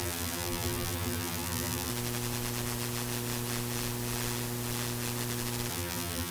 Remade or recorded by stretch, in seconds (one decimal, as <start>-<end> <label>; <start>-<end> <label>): 0.0-1.9 remade; 1.9-5.7 recorded; 5.7-6.3 remade

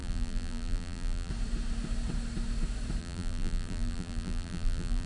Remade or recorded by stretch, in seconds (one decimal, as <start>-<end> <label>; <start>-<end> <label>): 0.0-1.3 remade; 1.3-3.0 recorded; 3.0-5.1 remade